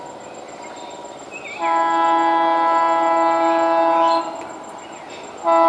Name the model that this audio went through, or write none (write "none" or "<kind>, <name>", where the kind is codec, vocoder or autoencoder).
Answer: none